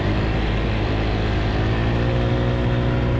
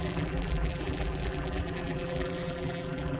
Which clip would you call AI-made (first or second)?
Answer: second